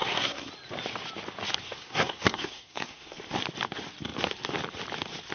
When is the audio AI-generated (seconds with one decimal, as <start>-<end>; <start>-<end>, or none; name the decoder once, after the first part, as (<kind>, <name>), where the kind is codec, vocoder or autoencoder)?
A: 0.0-0.5 (codec, SNAC); 1.6-3.2